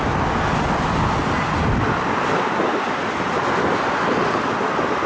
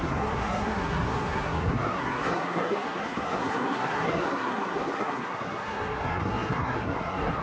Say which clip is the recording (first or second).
first